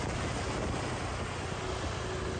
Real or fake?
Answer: real